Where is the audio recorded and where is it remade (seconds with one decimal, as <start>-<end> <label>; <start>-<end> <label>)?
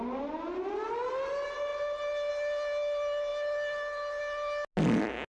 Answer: 0.0-5.4 recorded